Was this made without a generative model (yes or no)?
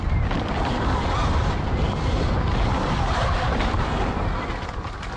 yes